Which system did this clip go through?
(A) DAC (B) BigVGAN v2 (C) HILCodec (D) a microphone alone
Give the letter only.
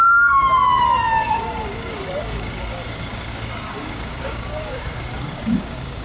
A